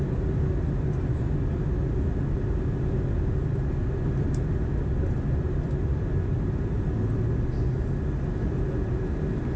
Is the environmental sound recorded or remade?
recorded